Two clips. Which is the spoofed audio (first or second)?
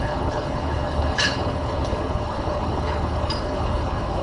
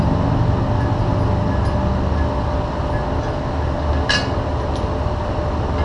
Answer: first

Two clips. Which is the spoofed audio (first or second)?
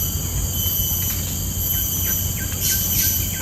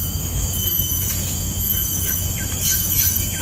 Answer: second